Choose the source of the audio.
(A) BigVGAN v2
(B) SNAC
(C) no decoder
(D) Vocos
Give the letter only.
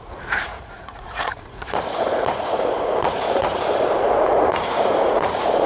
D